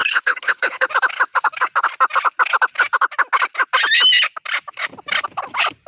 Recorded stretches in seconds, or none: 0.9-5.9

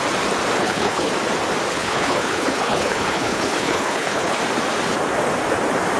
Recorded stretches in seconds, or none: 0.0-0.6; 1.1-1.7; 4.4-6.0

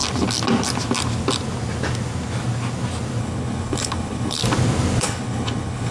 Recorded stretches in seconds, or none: 0.0-3.2; 4.4-5.0

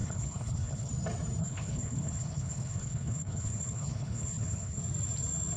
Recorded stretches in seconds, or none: 0.9-1.4; 4.8-5.6